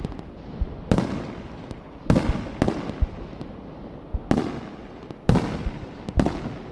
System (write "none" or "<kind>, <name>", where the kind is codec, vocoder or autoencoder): none